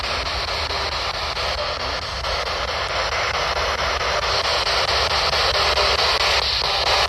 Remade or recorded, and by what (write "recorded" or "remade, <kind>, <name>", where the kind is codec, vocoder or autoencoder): recorded